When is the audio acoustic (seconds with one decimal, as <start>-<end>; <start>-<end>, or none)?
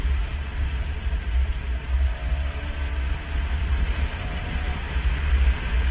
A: 2.2-3.6